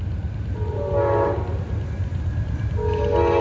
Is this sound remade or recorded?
recorded